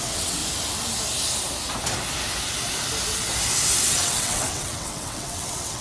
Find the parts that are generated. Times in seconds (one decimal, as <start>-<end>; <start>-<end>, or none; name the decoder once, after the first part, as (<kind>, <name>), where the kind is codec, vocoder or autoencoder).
0.0-0.4 (vocoder, WaveNeXt); 3.9-5.8